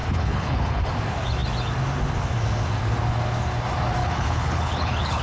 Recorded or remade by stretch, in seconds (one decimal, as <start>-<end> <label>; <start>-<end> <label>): 0.0-0.9 remade; 0.9-4.0 recorded; 4.0-5.2 remade